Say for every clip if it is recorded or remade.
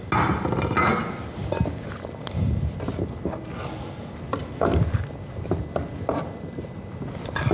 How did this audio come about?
recorded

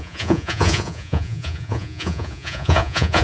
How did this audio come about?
remade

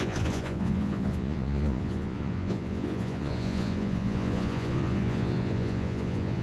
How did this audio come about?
remade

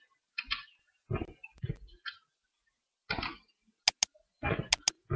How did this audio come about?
recorded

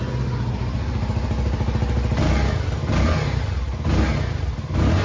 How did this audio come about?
recorded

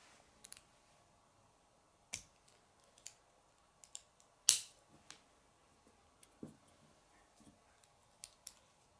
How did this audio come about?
recorded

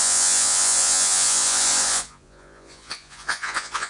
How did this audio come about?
remade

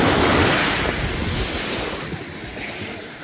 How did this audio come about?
recorded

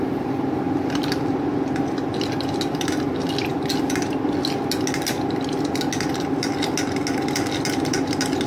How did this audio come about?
recorded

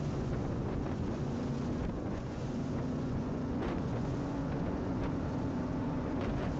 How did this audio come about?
remade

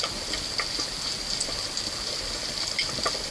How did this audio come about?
recorded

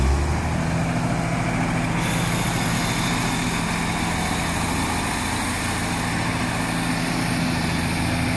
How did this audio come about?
recorded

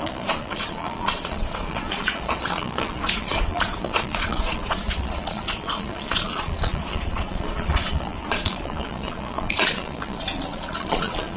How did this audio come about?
remade